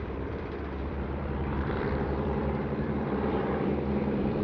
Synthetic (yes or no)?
yes